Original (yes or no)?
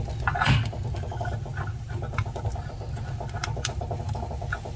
yes